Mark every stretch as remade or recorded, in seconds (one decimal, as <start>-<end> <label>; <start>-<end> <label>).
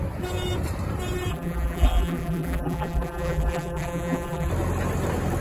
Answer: 0.0-1.3 recorded; 1.3-4.5 remade; 4.5-5.4 recorded